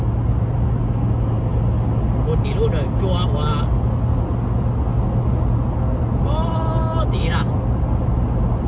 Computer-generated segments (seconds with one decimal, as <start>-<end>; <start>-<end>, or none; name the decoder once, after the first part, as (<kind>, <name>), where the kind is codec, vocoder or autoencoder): none